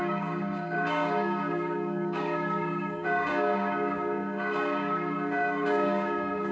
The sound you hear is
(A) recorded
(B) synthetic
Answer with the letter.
B